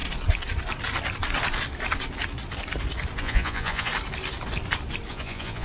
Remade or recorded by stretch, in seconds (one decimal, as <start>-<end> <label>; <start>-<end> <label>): 0.0-3.2 recorded; 3.2-3.9 remade; 3.9-5.1 recorded; 5.1-5.6 remade